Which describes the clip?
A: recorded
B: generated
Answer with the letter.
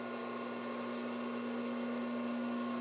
A